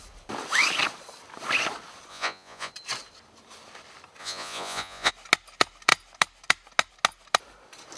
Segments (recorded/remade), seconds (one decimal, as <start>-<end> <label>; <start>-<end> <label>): 0.0-2.1 recorded; 2.1-2.7 remade; 2.7-4.2 recorded; 4.2-5.1 remade; 5.1-8.0 recorded